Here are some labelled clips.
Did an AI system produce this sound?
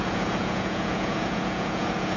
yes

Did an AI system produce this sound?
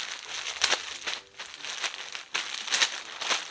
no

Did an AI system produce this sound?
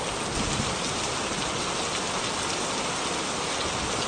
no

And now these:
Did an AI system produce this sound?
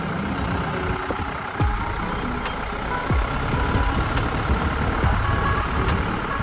no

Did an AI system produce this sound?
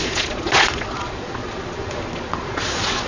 yes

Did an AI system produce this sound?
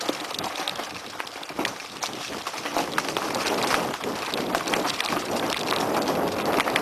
no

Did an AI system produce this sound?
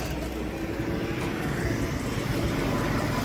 no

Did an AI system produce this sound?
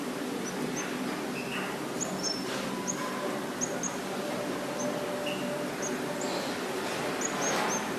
no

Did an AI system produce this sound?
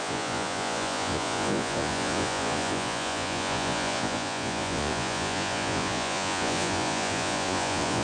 yes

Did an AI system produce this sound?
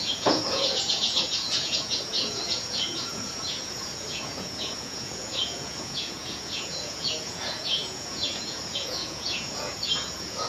yes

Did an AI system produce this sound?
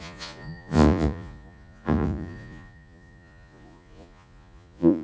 yes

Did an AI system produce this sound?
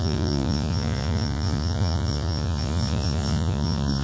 yes